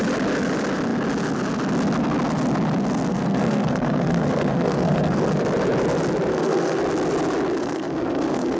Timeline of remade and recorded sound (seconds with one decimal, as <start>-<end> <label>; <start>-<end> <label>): 0.0-3.1 recorded; 3.1-5.3 remade; 5.3-6.3 recorded; 6.3-6.8 remade; 6.8-7.6 recorded; 7.6-8.6 remade

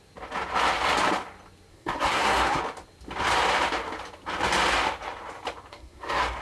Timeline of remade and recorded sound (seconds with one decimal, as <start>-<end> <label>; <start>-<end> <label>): 0.0-1.7 recorded; 1.7-2.6 remade; 2.6-5.7 recorded; 5.7-6.4 remade